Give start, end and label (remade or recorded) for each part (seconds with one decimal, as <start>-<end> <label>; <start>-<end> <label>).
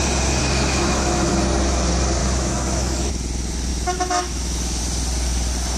0.0-0.4 recorded; 0.4-1.3 remade; 1.3-2.2 recorded; 2.2-3.1 remade; 3.1-3.7 recorded; 3.7-4.8 remade; 4.8-5.8 recorded